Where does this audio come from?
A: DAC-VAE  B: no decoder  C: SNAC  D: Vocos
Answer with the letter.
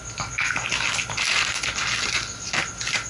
B